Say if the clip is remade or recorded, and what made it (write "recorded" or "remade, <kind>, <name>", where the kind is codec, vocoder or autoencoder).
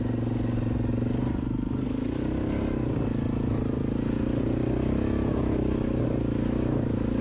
recorded